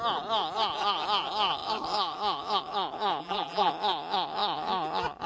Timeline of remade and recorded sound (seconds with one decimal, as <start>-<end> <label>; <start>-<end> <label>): 0.0-3.2 recorded; 3.2-3.7 remade; 3.7-5.3 recorded